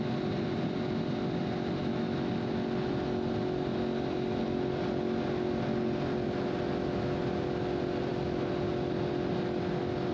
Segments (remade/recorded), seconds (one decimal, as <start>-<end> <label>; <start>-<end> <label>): 0.0-1.8 recorded; 1.8-2.3 remade; 2.3-10.1 recorded

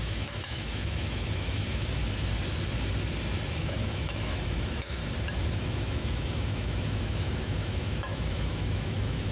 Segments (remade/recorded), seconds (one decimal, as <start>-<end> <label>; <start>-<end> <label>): 0.0-2.0 remade; 2.0-3.6 recorded; 3.6-5.0 remade; 5.0-5.5 recorded; 5.5-9.3 remade

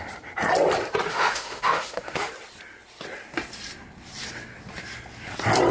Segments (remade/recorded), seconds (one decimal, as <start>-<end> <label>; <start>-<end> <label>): 0.0-1.1 recorded; 1.1-2.3 remade; 2.3-5.7 recorded

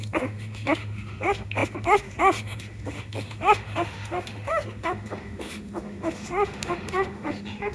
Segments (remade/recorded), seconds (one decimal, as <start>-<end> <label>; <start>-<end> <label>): 0.0-7.7 remade

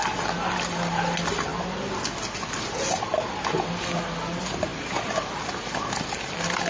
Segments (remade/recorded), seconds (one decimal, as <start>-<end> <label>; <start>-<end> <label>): 0.0-6.7 recorded

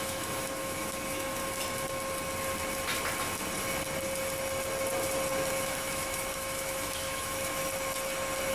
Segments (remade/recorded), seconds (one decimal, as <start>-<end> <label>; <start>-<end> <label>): 0.0-1.4 remade; 1.4-5.5 recorded; 5.5-7.6 remade; 7.6-8.5 recorded